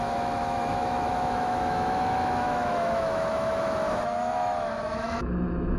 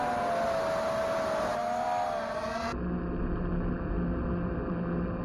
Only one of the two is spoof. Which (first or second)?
first